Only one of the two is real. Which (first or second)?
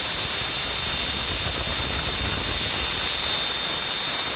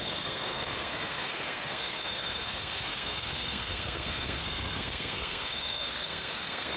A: first